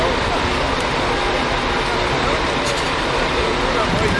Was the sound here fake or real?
real